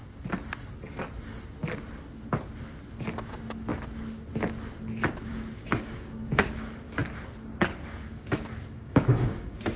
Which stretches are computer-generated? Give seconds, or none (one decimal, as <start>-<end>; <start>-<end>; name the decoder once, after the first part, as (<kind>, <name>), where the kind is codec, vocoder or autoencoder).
5.3-6.4 (codec, DAC); 8.0-9.8